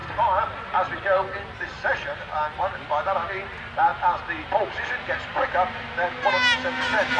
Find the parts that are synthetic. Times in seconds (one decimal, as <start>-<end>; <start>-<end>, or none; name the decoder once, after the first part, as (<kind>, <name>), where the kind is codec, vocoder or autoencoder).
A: none